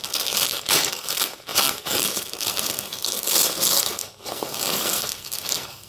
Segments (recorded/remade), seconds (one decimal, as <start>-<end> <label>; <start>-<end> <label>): 0.0-5.9 remade